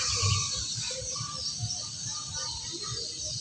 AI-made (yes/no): no